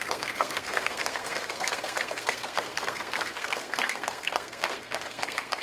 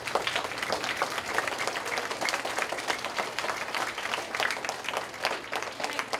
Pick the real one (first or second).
second